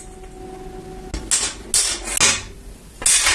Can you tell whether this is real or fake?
real